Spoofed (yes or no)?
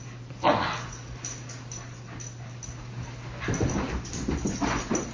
no